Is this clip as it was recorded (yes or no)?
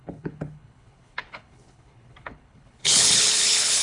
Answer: no